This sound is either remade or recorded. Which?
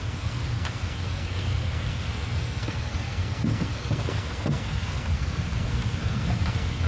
remade